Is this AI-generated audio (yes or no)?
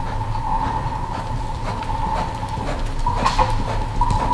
no